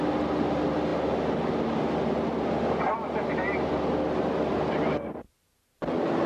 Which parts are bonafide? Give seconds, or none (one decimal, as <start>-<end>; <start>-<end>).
0.0-6.3